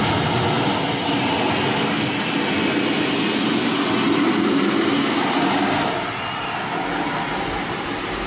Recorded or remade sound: recorded